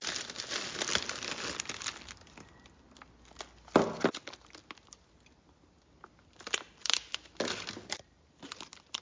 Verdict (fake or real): real